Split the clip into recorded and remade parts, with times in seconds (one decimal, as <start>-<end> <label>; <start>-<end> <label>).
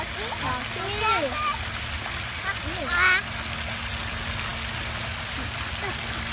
0.0-6.3 recorded